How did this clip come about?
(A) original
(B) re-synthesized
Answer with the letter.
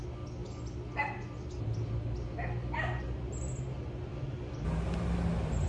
A